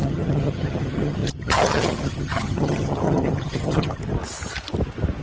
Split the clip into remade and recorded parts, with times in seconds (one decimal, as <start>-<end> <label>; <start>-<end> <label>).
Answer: 0.0-4.0 remade; 4.0-5.2 recorded